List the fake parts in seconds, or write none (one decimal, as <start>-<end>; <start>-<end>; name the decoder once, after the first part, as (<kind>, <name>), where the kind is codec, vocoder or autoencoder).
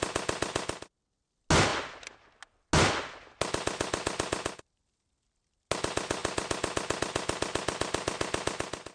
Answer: none